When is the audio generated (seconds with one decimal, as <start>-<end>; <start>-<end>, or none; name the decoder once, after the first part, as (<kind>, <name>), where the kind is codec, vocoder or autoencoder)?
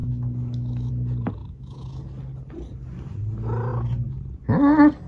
0.0-0.9 (autoencoder, DAC-VAE); 1.4-2.0